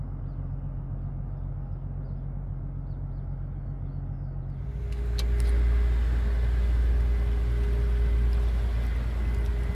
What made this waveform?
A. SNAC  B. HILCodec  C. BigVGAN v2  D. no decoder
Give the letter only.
D